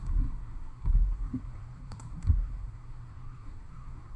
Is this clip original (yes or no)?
no